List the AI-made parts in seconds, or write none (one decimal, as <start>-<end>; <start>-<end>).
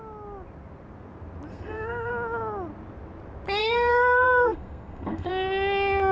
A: 1.5-2.1; 3.6-5.3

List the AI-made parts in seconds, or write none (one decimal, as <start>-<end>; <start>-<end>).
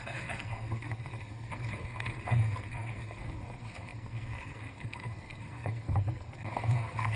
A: 0.0-7.2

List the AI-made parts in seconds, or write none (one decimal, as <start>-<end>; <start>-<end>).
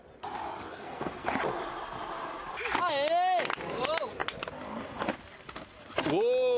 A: 0.7-1.4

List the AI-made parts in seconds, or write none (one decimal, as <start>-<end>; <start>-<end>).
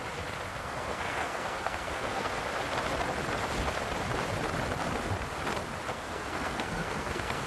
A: 0.5-2.4; 5.9-7.5